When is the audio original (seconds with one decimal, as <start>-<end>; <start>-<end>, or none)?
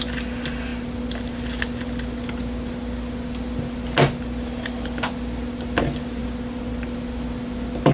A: 0.0-7.9